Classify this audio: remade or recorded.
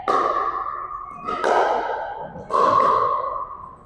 recorded